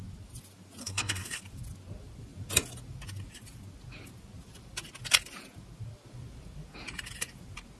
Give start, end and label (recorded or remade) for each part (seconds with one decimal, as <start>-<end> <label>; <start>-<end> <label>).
0.0-0.8 recorded; 0.8-1.4 remade; 1.4-7.8 recorded